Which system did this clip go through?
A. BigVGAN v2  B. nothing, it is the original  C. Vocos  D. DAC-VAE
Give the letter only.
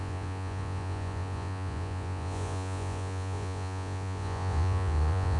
C